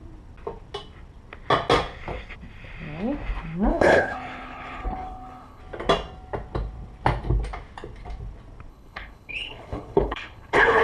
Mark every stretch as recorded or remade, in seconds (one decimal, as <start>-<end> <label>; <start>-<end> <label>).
0.0-3.7 recorded; 3.7-5.6 remade; 5.6-8.7 recorded; 8.7-10.8 remade